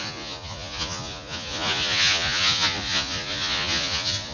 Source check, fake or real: fake